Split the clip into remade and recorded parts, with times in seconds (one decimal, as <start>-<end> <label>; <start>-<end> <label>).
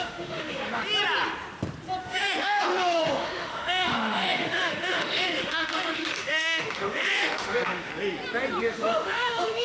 0.0-0.8 remade; 0.8-2.0 recorded; 2.0-7.9 remade; 7.9-8.6 recorded; 8.6-9.6 remade